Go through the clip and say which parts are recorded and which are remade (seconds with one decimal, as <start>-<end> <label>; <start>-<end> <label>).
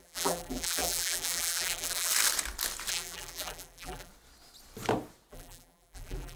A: 0.0-2.1 remade; 2.1-2.9 recorded; 2.9-4.1 remade; 4.1-5.3 recorded; 5.3-6.4 remade